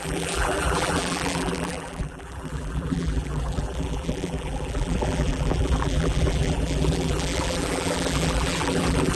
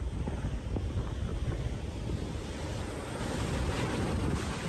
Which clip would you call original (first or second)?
second